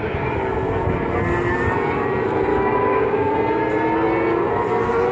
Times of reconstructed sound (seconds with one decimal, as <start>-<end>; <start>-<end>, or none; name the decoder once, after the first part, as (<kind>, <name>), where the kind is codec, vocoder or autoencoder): 2.5-3.3 (codec, DAC)